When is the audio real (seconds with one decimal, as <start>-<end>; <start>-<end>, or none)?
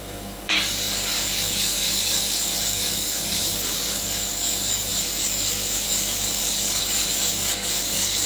none